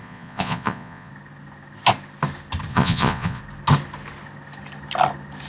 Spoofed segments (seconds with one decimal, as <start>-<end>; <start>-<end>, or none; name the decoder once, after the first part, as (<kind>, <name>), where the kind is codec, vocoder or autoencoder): 0.0-1.1 (vocoder, Vocos); 2.7-3.4